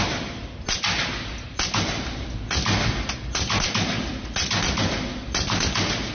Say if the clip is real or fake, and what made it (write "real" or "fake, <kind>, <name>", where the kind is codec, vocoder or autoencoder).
real